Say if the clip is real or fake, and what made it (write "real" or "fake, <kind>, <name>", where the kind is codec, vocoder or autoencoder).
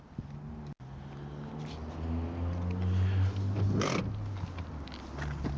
real